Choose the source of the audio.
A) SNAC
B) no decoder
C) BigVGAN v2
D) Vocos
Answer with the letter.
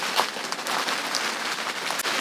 B